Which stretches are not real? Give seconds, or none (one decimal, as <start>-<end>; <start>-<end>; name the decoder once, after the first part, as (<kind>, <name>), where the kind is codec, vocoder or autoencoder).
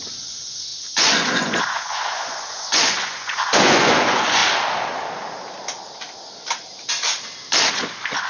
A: 0.0-4.4 (vocoder, Vocos); 7.7-8.3